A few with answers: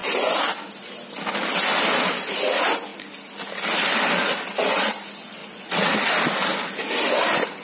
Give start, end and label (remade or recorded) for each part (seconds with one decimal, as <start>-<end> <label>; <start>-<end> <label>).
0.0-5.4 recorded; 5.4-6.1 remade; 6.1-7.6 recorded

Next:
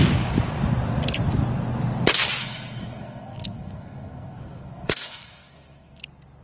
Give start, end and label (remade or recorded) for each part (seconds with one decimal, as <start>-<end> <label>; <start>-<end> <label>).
0.0-2.4 recorded; 2.4-6.0 remade; 6.0-6.4 recorded

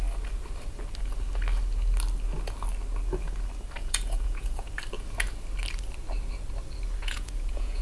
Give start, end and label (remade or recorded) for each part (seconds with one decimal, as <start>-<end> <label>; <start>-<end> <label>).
0.0-3.8 recorded; 3.8-4.7 remade; 4.7-7.0 recorded; 7.0-7.8 remade

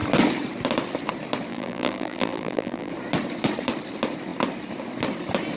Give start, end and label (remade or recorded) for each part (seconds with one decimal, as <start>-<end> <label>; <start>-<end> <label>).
0.0-1.5 recorded; 1.5-2.9 remade; 2.9-5.6 recorded

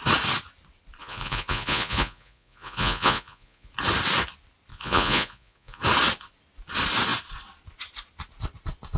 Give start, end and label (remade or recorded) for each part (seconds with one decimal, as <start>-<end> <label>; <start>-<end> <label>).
0.0-1.0 recorded; 1.0-3.7 remade; 3.7-4.7 recorded; 4.7-5.8 remade; 5.8-9.0 recorded